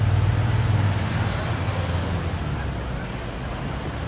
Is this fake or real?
real